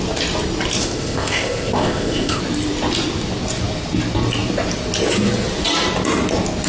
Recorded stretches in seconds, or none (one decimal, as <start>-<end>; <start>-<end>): 0.0-0.8; 2.4-6.7